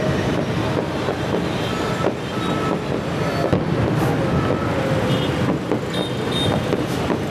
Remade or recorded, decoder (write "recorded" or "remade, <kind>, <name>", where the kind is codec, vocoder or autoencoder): recorded